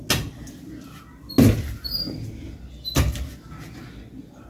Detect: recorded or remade recorded